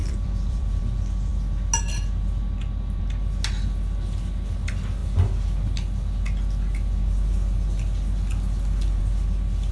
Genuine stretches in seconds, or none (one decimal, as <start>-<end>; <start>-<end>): 0.8-9.7